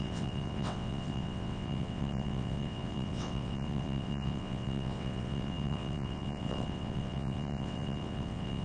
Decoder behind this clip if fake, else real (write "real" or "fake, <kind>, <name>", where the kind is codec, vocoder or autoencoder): fake, vocoder, WaveNeXt